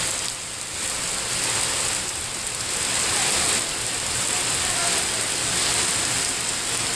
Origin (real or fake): real